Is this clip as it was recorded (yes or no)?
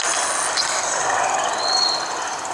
yes